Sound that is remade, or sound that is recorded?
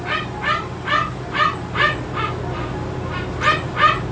recorded